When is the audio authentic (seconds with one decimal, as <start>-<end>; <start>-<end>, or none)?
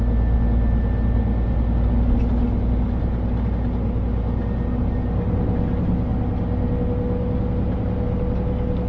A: 0.0-8.9